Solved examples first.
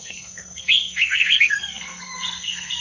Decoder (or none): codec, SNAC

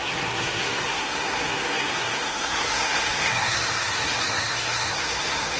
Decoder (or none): codec, SNAC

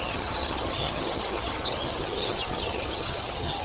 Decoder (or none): vocoder, HiFi-GAN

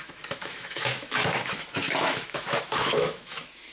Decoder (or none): autoencoder, DAC-VAE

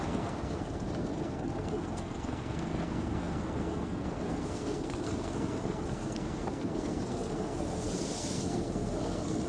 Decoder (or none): codec, SNAC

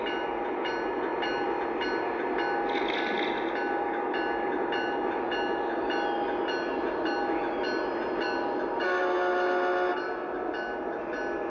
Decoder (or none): none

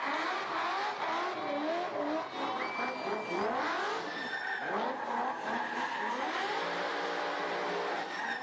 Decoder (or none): none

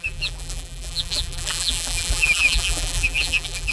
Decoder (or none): vocoder, BigVGAN v2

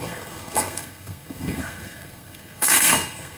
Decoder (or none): codec, SNAC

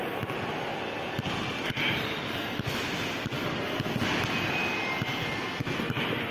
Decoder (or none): none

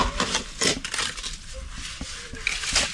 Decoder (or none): none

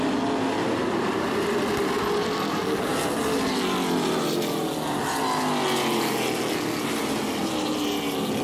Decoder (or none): none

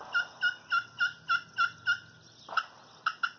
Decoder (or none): none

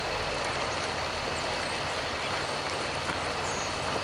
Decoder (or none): none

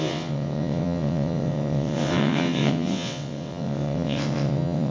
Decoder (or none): vocoder, WaveNeXt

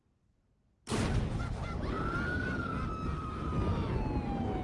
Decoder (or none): none